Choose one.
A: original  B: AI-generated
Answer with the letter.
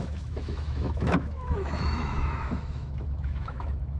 B